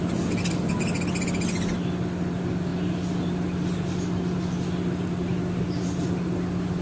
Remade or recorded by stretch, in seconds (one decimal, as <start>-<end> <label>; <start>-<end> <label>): 0.0-6.8 recorded